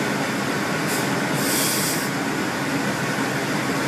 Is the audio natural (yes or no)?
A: yes